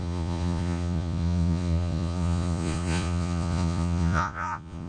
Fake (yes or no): yes